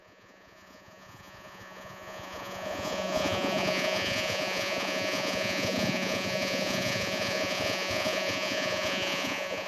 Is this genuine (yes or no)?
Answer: no